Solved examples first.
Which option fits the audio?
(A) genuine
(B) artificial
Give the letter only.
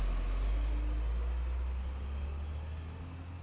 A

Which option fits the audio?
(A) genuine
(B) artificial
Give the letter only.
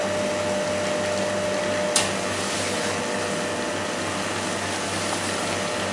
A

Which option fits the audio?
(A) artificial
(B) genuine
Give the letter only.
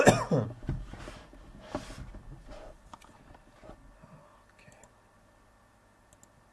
B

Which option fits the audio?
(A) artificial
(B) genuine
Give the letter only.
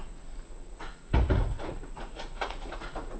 A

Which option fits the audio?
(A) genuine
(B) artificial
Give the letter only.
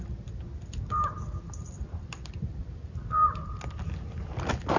A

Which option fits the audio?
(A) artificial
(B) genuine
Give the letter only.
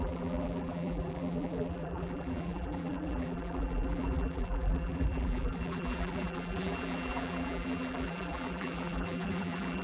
A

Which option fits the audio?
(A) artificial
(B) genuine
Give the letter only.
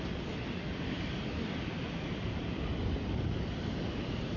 B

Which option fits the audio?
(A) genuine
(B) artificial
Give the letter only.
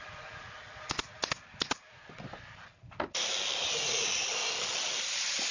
A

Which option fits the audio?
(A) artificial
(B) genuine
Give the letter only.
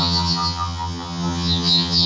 A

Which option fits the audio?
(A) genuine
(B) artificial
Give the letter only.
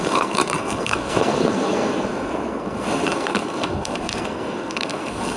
B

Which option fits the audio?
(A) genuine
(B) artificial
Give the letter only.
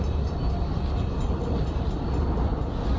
A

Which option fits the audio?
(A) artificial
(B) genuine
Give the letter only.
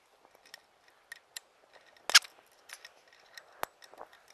B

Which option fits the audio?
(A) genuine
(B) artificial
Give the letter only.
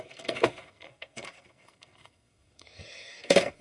B